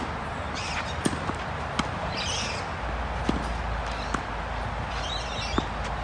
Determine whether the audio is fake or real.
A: real